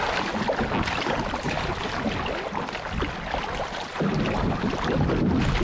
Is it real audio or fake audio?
real